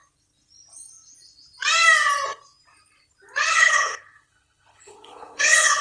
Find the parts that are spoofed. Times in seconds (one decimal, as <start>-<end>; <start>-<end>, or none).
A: 3.5-5.8